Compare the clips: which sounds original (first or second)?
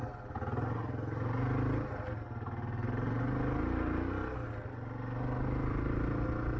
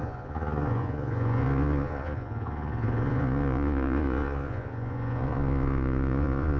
first